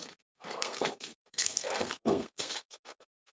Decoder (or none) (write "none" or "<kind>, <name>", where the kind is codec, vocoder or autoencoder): codec, SNAC